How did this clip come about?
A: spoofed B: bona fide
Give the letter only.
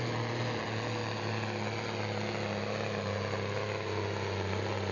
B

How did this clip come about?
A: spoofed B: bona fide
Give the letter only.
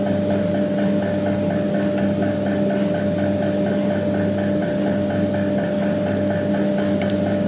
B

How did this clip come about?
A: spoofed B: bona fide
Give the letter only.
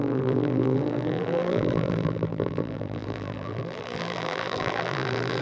A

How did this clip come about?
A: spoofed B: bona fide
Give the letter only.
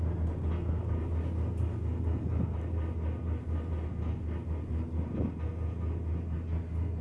B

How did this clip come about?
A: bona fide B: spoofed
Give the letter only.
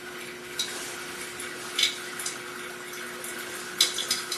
A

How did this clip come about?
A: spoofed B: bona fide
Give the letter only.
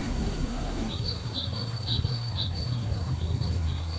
A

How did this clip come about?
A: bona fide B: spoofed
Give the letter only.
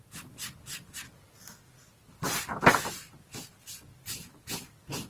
A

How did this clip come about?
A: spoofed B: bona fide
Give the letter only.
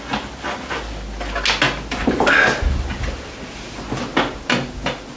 B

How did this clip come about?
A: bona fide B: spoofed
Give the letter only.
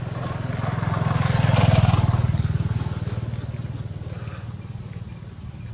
A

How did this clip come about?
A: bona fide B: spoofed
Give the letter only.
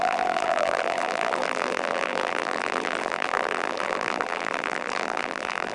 B